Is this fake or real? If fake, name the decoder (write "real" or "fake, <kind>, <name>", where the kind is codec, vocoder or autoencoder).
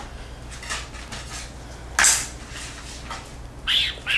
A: real